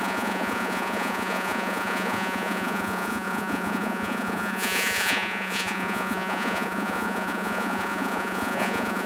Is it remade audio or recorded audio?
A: remade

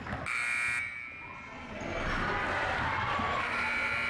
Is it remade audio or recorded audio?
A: recorded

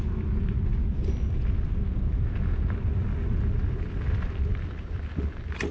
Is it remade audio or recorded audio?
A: recorded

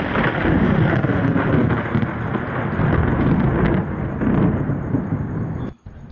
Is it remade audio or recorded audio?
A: recorded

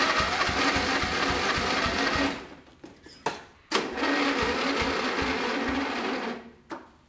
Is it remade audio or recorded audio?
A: recorded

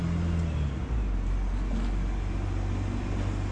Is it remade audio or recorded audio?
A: recorded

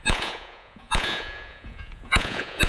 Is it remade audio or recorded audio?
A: remade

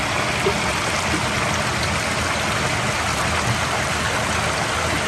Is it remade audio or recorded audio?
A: recorded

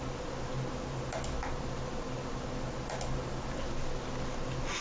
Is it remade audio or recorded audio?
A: recorded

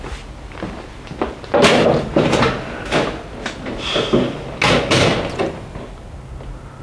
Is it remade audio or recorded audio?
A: recorded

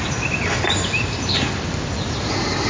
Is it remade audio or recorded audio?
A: recorded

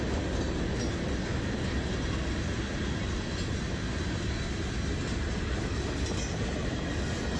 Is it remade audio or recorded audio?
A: recorded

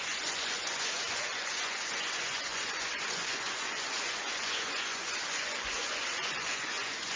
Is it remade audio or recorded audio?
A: remade